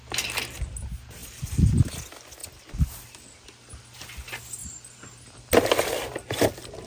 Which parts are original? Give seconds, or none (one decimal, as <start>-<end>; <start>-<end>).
0.0-6.9